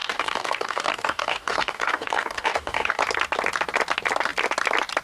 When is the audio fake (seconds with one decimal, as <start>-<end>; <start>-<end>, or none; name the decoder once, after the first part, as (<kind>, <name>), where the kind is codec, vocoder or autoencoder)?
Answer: 0.0-3.0 (codec, DAC)